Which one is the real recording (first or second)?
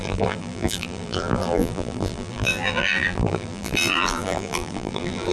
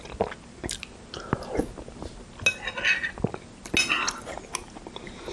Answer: second